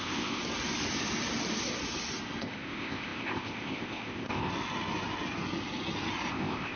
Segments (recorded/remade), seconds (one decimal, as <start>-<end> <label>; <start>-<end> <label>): 0.0-0.4 remade; 0.4-2.4 recorded; 2.4-4.5 remade; 4.5-6.3 recorded; 6.3-6.8 remade